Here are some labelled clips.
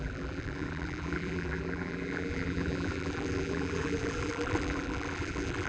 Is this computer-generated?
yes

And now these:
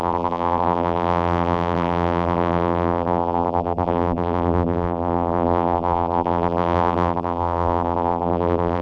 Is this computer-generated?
yes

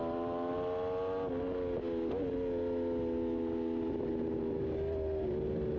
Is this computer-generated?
no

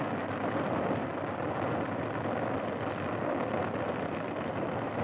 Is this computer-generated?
no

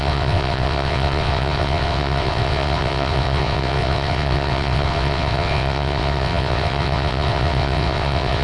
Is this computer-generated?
yes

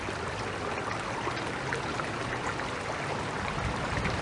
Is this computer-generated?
no